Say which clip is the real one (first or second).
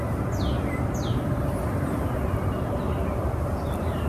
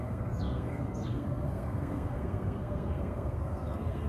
first